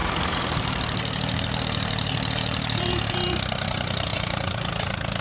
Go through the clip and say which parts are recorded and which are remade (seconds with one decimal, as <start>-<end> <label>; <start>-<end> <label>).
0.0-2.9 remade; 2.9-4.1 recorded; 4.1-4.7 remade; 4.7-5.2 recorded